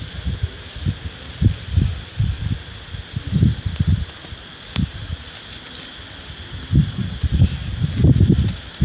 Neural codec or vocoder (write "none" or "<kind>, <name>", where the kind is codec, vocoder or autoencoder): none